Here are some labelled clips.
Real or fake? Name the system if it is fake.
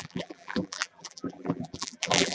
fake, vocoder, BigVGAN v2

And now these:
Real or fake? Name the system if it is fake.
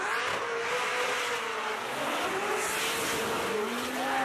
real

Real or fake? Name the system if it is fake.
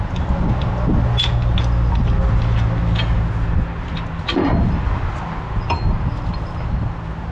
real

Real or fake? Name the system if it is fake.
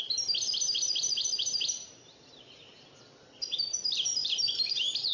fake, vocoder, BigVGAN v2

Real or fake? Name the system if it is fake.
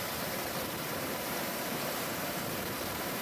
fake, vocoder, BigVGAN v2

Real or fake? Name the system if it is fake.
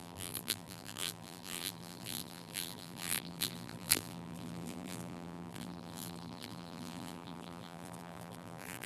fake, vocoder, BigVGAN v2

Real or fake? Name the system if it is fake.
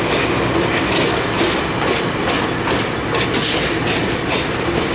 real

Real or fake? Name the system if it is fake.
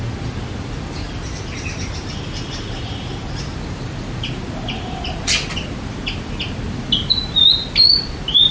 fake, vocoder, BigVGAN v2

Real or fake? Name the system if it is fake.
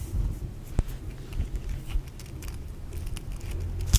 real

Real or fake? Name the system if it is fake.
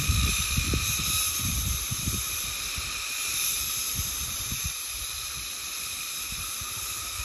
fake, vocoder, BigVGAN v2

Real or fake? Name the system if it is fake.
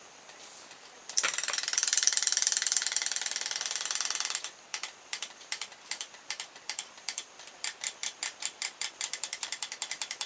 fake, vocoder, BigVGAN v2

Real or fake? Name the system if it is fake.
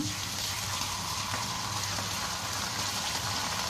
real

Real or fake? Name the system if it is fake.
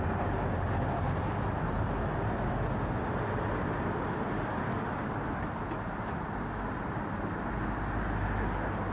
real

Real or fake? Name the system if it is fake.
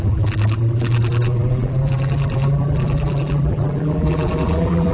fake, vocoder, BigVGAN v2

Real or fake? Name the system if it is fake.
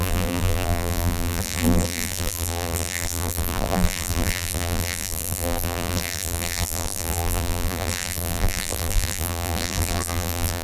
fake, vocoder, BigVGAN v2